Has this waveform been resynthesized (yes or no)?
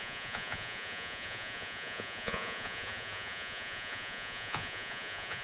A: yes